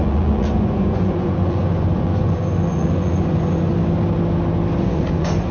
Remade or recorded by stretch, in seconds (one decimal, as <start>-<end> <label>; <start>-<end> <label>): 0.0-3.7 remade; 3.7-4.8 recorded; 4.8-5.5 remade